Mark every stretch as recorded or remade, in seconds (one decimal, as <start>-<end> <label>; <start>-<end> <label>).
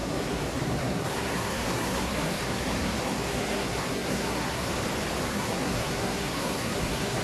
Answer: 0.0-4.7 remade; 4.7-5.2 recorded; 5.2-7.2 remade